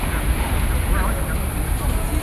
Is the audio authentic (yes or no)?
yes